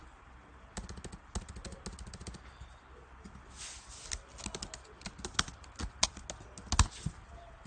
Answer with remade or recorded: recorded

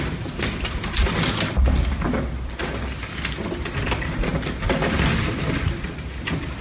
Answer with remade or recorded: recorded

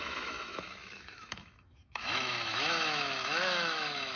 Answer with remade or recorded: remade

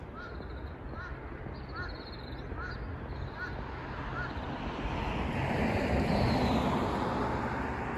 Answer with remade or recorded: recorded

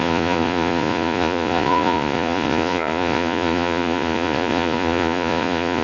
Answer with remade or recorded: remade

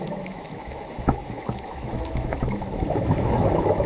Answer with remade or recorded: remade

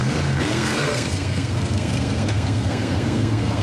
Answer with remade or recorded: remade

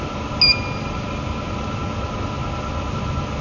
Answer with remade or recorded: recorded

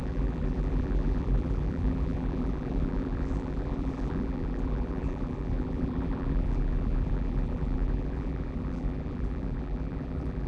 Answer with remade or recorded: remade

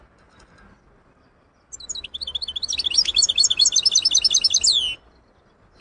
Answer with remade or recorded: recorded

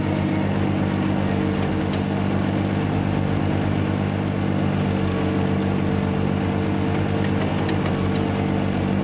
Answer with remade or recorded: recorded